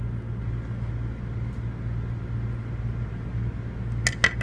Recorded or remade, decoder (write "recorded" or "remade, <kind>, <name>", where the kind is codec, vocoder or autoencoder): recorded